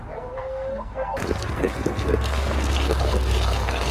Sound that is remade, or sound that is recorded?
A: remade